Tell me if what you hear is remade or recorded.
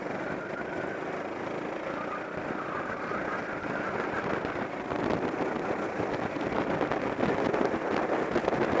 recorded